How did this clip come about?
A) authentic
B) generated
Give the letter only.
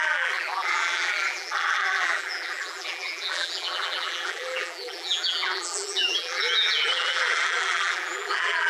B